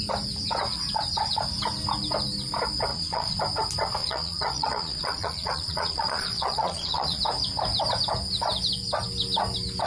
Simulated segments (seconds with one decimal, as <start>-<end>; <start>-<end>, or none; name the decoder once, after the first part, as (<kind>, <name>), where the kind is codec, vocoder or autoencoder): 2.9-3.4 (vocoder, Vocos); 4.0-7.2